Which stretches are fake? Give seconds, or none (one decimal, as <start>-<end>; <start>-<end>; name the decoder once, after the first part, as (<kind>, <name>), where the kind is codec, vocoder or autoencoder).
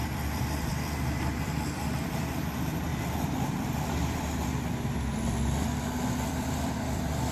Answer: 0.0-1.8 (vocoder, BigVGAN v2); 2.9-7.3